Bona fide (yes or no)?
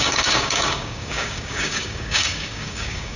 no